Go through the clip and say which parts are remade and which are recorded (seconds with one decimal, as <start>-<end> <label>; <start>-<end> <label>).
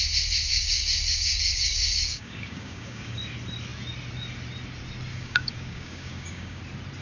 0.0-0.5 recorded; 0.5-3.2 remade; 3.2-5.1 recorded; 5.1-6.6 remade; 6.6-7.0 recorded